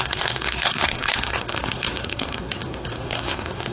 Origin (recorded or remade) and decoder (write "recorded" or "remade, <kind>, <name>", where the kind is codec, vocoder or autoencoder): remade, codec, SNAC